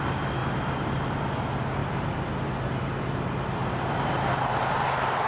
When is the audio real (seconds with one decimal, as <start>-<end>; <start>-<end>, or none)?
0.0-0.4; 1.2-1.8; 2.8-3.6; 4.1-5.3